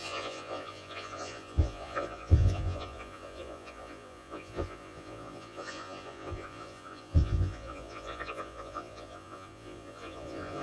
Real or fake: fake